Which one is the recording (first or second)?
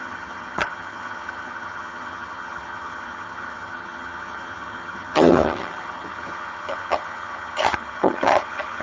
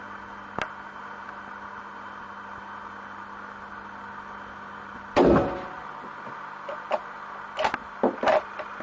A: second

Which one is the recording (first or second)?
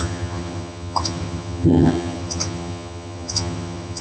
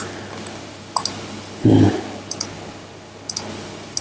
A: second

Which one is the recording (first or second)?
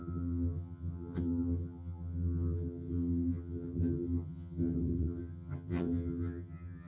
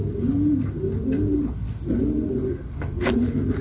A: second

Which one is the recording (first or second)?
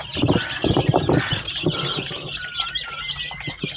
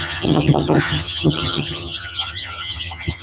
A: first